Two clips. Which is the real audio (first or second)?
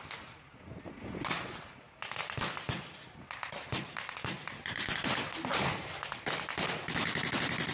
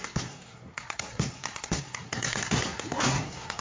first